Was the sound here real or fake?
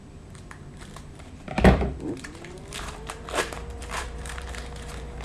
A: fake